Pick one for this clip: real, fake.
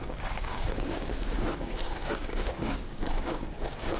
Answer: fake